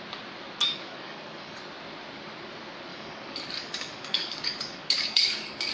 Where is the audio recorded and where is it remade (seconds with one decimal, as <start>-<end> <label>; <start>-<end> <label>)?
0.0-0.6 recorded; 0.6-1.6 remade; 1.6-2.9 recorded; 2.9-5.7 remade